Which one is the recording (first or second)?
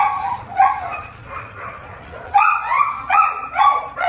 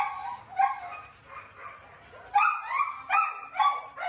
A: second